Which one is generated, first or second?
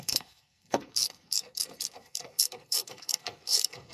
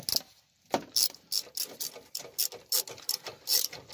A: first